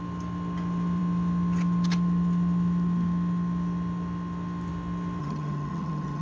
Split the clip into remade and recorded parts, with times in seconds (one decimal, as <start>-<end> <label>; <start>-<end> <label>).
0.0-5.2 recorded; 5.2-6.2 remade